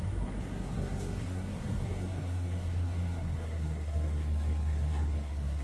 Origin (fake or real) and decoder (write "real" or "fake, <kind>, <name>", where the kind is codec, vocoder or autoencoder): fake, codec, SNAC